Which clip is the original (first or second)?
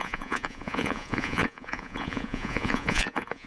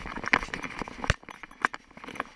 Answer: second